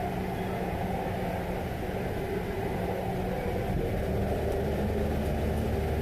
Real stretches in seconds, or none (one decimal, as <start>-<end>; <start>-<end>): 0.0-6.0